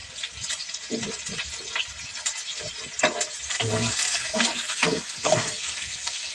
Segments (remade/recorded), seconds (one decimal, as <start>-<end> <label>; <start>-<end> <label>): 0.0-3.5 recorded; 3.5-6.3 remade